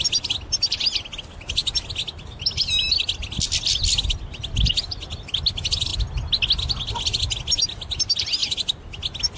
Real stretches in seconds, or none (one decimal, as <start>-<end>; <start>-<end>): 0.0-9.4